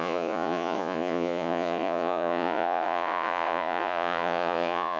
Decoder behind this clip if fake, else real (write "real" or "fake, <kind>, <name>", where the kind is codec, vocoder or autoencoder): fake, vocoder, Vocos